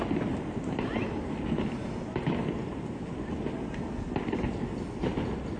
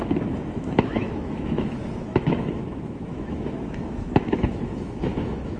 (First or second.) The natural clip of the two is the first